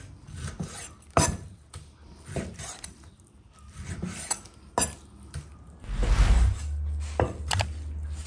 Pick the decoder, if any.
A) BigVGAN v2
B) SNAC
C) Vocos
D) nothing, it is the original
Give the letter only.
D